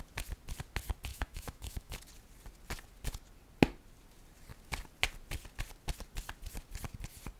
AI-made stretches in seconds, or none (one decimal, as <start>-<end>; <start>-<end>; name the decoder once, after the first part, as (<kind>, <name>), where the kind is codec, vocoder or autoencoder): 1.1-2.0 (autoencoder, DAC-VAE)